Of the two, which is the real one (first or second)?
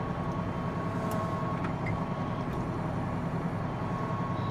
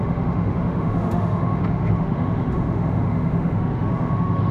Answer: first